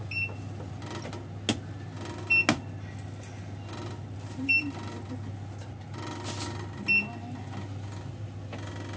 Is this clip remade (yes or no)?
no